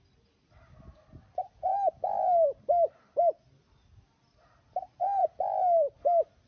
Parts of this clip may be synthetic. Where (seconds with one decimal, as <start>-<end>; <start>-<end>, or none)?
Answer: none